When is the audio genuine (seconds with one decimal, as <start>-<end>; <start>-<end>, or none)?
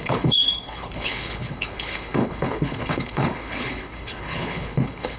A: none